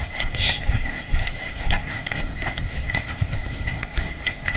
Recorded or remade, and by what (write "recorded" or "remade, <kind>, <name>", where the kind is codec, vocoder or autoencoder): remade, codec, SNAC